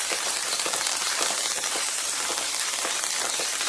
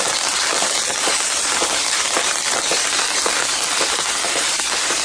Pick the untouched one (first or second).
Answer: second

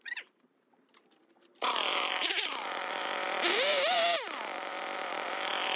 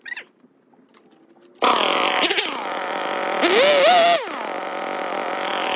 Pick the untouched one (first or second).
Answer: second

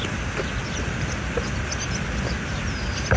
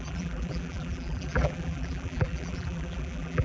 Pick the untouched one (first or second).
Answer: first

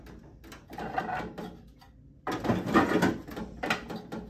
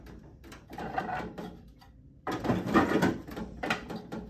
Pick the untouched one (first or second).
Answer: first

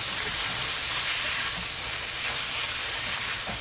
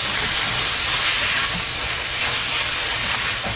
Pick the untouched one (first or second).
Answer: second